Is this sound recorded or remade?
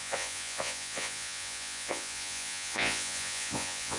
remade